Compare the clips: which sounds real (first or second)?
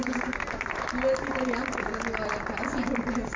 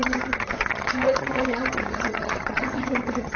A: first